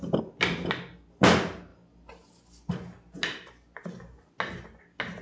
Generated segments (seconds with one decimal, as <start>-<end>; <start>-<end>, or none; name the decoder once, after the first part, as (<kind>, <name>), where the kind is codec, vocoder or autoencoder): none